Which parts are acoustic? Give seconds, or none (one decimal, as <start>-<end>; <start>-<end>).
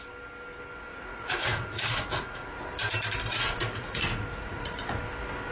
0.0-0.9; 2.7-3.3; 5.0-5.5